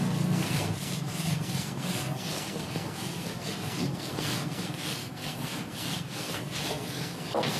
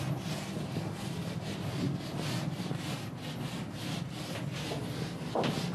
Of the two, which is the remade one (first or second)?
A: first